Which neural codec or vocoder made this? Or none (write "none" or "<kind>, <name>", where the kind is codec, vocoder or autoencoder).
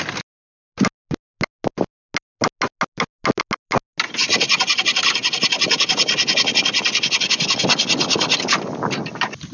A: none